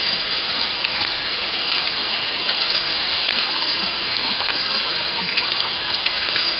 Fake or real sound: fake